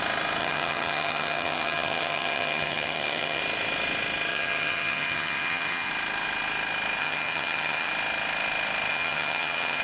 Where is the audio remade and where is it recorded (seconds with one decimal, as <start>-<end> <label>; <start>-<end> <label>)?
0.0-0.4 recorded; 0.4-3.4 remade; 3.4-4.3 recorded; 4.3-5.9 remade; 5.9-7.0 recorded; 7.0-7.9 remade; 7.9-8.9 recorded; 8.9-9.8 remade